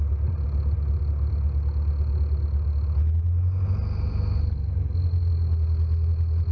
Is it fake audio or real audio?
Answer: real